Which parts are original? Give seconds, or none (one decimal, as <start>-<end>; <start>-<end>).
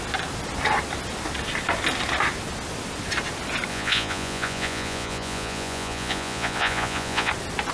0.0-3.7; 7.3-7.7